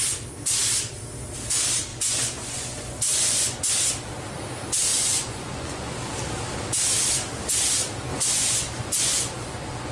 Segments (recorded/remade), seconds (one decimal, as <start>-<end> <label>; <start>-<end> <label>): 0.0-1.9 recorded; 1.9-3.6 remade; 3.6-4.9 recorded; 4.9-6.1 remade; 6.1-8.1 recorded; 8.1-9.9 remade